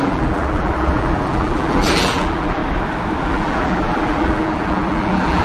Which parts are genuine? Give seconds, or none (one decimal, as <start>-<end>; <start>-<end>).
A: 2.6-3.2